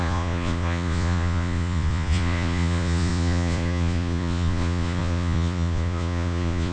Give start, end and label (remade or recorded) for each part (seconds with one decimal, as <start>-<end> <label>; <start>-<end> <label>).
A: 0.0-6.7 remade